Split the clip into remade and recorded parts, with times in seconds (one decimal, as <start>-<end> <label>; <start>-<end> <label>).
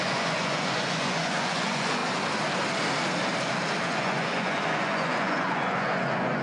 0.0-2.0 remade; 2.0-3.9 recorded; 3.9-6.4 remade